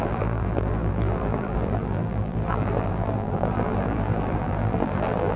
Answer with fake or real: fake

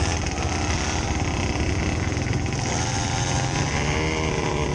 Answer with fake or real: fake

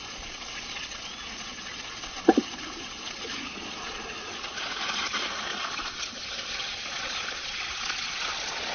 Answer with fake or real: fake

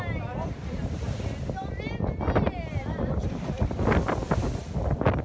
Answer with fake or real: real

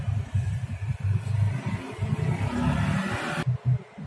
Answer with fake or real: real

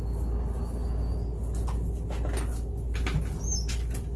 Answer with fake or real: real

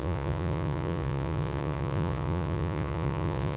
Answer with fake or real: fake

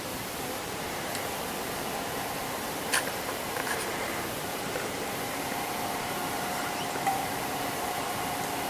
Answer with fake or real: fake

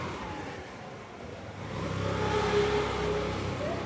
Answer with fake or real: real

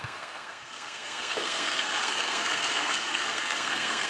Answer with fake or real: fake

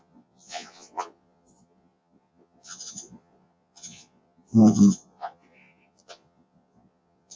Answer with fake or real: fake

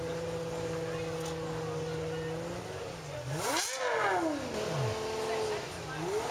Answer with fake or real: real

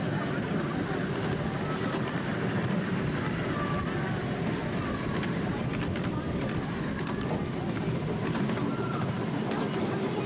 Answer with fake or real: real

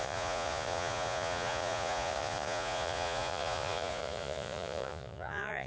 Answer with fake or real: fake